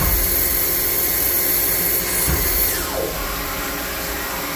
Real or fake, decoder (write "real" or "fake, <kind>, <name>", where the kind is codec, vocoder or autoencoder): real